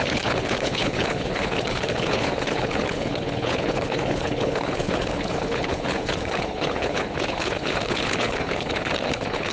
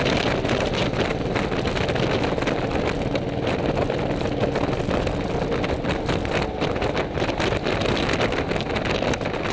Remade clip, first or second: first